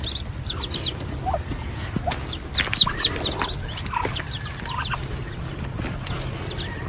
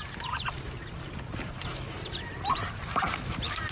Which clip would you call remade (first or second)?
second